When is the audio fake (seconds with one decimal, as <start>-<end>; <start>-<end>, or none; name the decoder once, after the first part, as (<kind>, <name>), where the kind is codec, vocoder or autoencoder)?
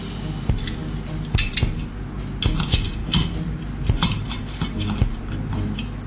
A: none